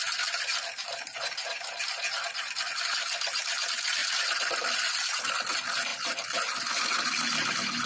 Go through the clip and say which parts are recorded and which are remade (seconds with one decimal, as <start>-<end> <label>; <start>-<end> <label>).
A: 0.0-7.9 recorded